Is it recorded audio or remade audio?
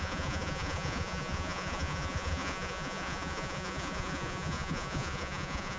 remade